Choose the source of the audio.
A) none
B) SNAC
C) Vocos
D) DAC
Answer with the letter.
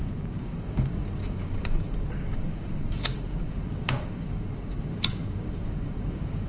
D